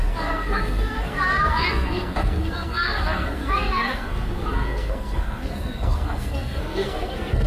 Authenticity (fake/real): fake